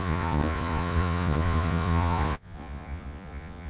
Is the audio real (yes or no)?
no